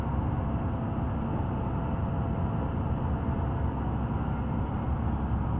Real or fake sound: real